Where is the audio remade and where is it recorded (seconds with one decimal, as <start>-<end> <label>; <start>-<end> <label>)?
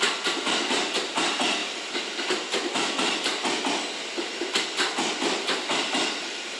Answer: 0.0-6.6 recorded